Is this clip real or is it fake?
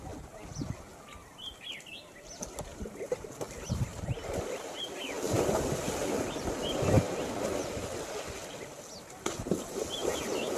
real